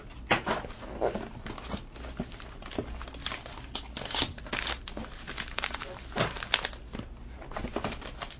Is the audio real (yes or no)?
yes